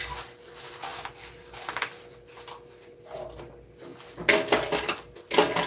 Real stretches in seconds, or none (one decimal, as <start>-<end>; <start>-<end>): 0.0-5.7